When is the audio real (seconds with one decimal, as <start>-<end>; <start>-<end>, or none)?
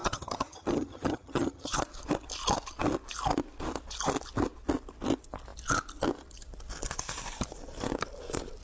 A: 1.8-8.6